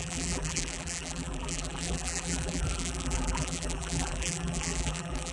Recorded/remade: remade